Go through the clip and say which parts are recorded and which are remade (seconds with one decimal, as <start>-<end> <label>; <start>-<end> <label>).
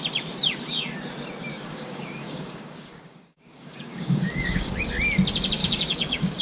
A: 0.0-1.5 recorded; 1.5-4.8 remade; 4.8-5.6 recorded; 5.6-6.4 remade